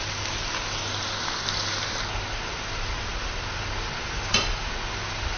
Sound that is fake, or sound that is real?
real